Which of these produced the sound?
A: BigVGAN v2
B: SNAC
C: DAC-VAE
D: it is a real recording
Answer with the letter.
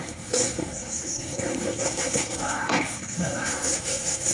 B